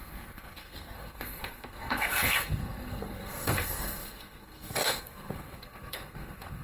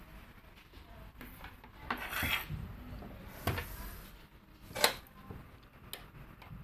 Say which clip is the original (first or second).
second